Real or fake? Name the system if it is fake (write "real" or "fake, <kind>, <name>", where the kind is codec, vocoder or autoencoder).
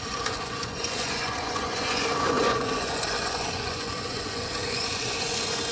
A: fake, vocoder, Vocos